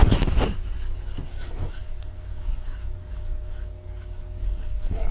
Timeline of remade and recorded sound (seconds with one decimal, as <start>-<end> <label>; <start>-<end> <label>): 0.0-1.3 recorded; 1.3-5.1 remade